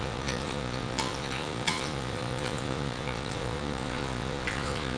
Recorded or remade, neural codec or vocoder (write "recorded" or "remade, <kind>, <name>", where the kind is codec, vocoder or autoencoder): remade, vocoder, Vocos